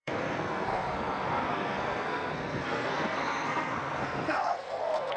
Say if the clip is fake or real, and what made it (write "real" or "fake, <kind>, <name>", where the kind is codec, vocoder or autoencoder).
fake, codec, SNAC